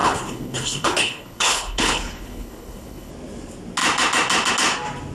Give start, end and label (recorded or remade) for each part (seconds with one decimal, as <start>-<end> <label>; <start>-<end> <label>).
0.0-3.1 remade; 3.1-5.1 recorded